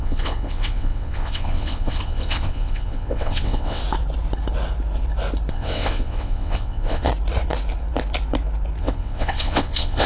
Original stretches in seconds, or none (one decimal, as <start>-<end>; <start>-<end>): 3.8-5.5; 7.1-8.8